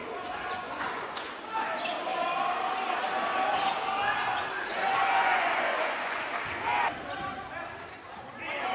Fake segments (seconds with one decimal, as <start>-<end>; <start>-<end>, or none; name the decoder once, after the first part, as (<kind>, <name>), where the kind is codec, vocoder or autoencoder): 0.0-1.3 (vocoder, Vocos); 4.7-6.2